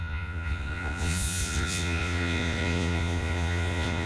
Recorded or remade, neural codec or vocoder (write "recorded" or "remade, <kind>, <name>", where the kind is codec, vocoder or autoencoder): remade, vocoder, Vocos